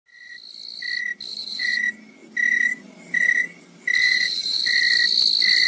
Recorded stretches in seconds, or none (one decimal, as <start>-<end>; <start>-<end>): 0.0-1.3; 1.8-4.0; 4.6-5.7